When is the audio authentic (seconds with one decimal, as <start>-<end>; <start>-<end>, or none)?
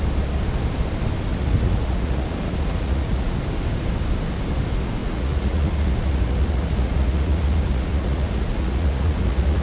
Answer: 0.0-1.3; 3.4-5.0